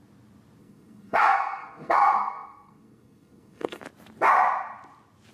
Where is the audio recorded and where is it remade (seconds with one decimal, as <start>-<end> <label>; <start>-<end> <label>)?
0.0-0.6 recorded; 0.6-3.8 remade; 3.8-5.3 recorded